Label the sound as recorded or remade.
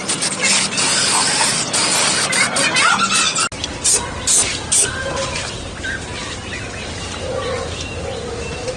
recorded